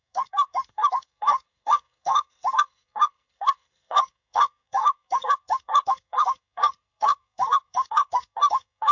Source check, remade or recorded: remade